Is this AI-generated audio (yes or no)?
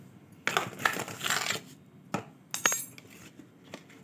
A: no